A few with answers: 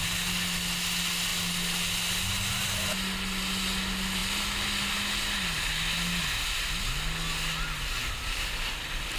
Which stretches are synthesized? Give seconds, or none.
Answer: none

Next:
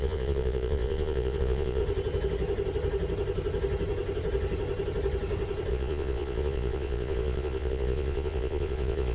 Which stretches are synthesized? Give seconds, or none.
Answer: 0.0-1.8 (vocoder, Vocos); 5.7-9.1

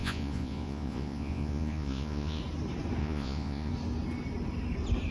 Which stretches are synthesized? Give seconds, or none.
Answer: 0.0-2.4 (vocoder, Vocos); 3.0-3.7

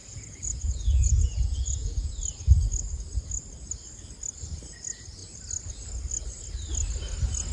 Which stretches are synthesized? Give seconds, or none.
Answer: 0.0-2.1 (vocoder, Vocos)

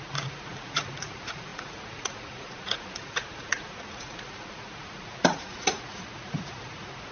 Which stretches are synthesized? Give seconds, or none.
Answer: 0.0-7.1 (vocoder, Vocos)

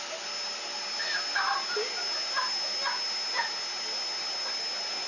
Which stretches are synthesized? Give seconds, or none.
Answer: none

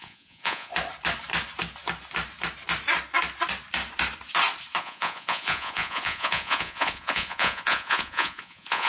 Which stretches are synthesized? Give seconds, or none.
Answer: 0.0-0.7 (vocoder, Vocos); 4.8-8.9